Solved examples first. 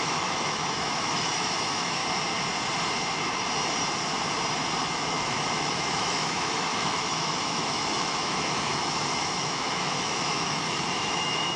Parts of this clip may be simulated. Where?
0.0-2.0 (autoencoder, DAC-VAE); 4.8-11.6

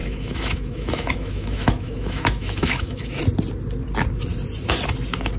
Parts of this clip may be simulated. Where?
0.0-3.2 (autoencoder, DAC-VAE)

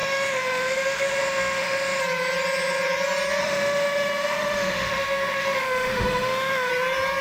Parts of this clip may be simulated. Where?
0.0-2.0 (autoencoder, DAC-VAE); 3.4-6.7